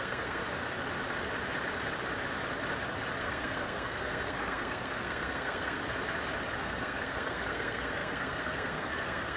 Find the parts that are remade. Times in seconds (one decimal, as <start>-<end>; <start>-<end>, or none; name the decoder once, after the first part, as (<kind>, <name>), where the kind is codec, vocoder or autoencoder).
0.0-0.4 (codec, SNAC); 3.2-5.8; 6.6-9.4